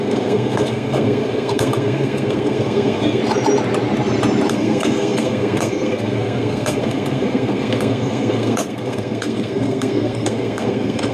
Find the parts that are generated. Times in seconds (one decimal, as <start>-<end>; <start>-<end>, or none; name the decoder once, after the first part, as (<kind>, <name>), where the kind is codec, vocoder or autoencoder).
0.0-3.2 (codec, SNAC); 4.5-11.1